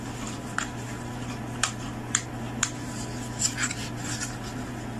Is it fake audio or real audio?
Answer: real